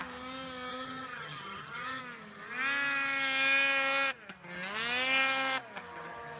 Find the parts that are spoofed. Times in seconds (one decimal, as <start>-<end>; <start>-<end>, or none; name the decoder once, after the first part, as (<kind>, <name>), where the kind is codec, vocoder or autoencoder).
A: 0.7-2.0 (vocoder, HiFi-GAN)